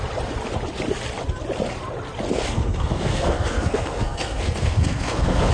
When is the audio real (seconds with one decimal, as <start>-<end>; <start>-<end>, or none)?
0.0-2.3